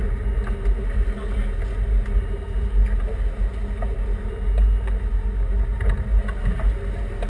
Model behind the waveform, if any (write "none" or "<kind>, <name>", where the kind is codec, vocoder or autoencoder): none